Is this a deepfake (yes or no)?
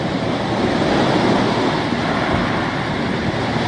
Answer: no